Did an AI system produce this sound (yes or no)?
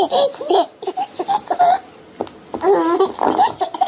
no